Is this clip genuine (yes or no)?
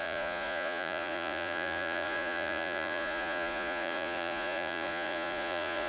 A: no